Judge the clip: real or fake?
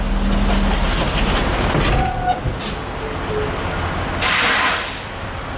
real